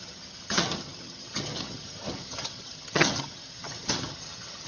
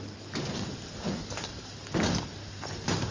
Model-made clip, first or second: first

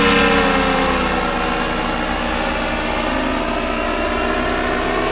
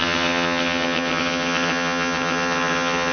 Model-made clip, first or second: second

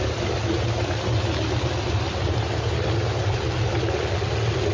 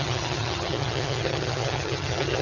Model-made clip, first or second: second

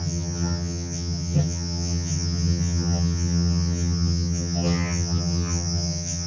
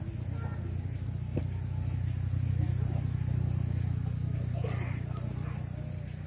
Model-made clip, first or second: first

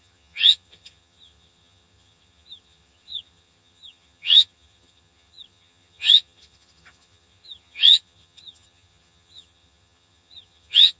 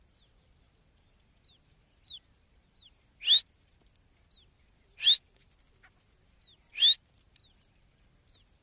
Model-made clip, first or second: first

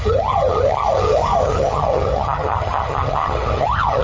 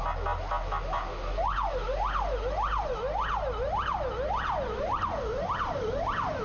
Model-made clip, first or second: first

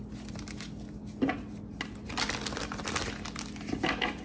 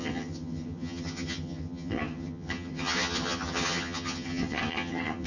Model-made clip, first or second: second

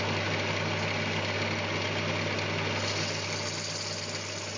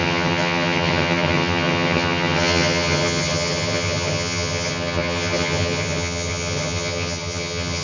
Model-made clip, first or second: second